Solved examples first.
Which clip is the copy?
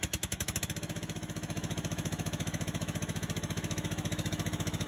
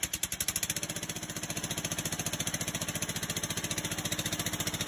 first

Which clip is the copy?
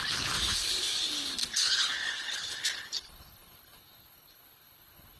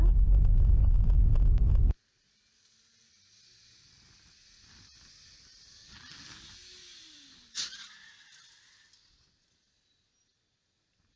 first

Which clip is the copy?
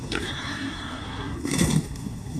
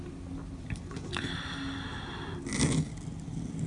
first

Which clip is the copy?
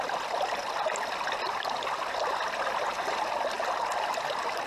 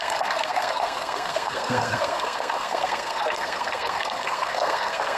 second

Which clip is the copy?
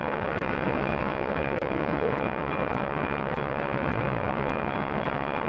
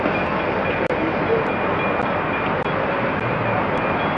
first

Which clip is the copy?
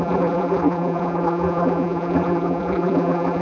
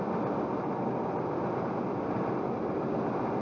first